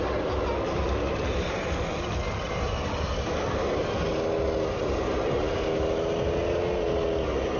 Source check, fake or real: real